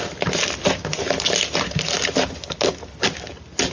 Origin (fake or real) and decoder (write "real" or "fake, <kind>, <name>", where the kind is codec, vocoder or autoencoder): real